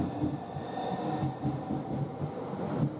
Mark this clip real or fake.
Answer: real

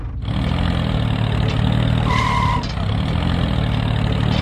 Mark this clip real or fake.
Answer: real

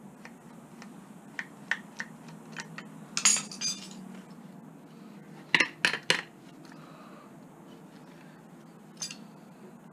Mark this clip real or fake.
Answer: real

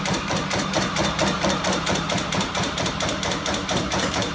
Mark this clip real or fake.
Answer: fake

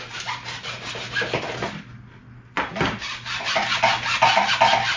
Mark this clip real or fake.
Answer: real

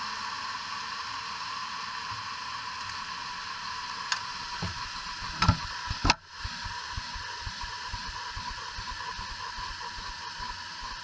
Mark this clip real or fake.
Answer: real